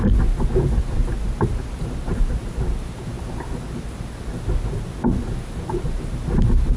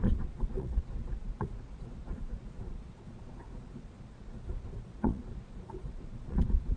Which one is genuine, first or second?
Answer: first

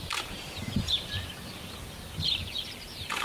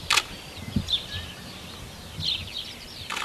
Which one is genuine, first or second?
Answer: second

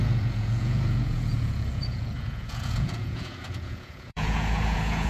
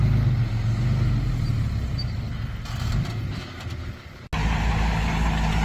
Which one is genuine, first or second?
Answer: second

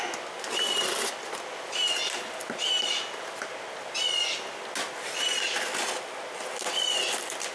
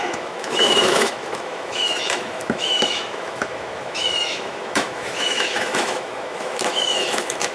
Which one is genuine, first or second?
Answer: first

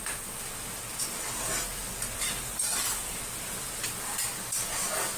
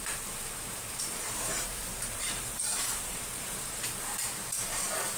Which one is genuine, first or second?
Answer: first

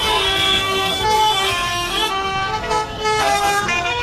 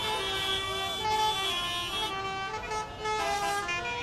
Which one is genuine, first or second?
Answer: second